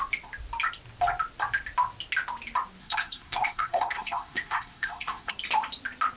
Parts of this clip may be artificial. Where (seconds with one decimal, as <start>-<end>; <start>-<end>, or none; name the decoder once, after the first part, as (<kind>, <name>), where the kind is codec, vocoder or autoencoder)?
2.8-5.3 (codec, SNAC)